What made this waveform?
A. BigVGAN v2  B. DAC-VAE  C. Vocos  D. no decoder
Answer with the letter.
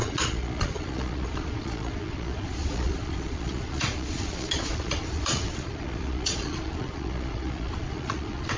C